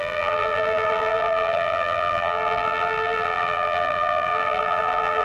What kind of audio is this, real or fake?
fake